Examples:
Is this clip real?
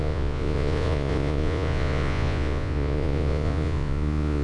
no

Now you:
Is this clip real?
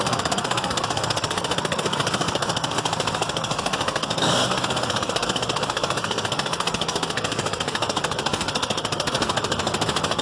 no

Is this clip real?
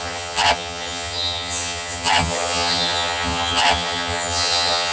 no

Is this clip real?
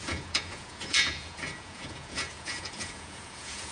no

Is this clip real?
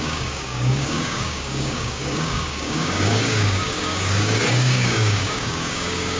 no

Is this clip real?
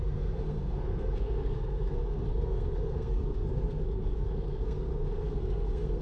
no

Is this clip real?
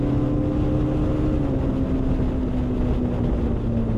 yes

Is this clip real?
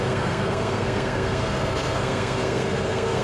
no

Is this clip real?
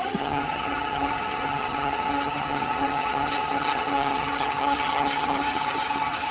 no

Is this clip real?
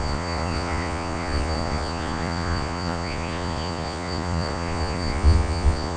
no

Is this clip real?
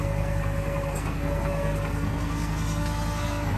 no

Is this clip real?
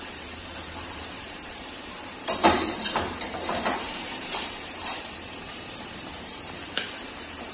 no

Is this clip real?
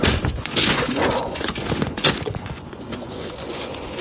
no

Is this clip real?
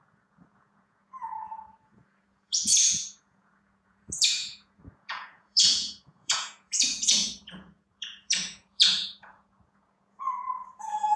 no